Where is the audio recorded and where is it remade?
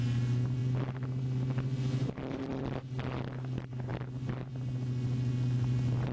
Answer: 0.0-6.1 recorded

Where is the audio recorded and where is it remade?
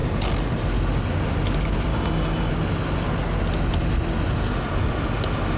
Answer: 0.0-1.9 recorded; 1.9-2.5 remade; 2.5-5.6 recorded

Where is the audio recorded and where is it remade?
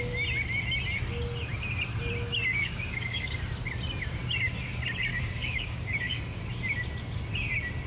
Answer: 0.0-2.5 recorded; 2.5-3.4 remade; 3.4-5.1 recorded; 5.1-6.2 remade; 6.2-7.9 recorded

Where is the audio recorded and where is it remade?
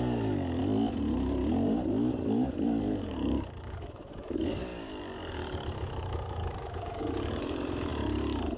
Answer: 0.0-0.6 remade; 0.6-2.1 recorded; 2.1-8.6 remade